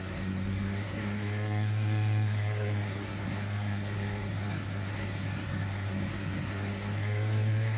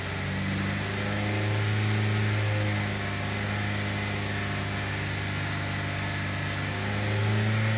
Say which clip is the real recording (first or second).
second